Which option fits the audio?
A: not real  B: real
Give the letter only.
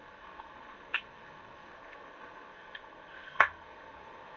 A